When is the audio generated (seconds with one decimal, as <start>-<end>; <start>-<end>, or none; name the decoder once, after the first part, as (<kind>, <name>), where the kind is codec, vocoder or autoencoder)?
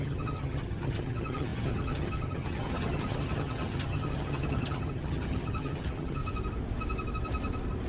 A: 0.0-6.2 (vocoder, HiFi-GAN)